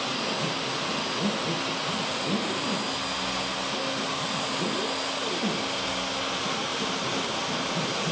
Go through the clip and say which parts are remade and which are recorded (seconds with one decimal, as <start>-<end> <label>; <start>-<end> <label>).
0.0-1.8 recorded; 1.8-2.6 remade; 2.6-6.7 recorded; 6.7-7.4 remade; 7.4-8.1 recorded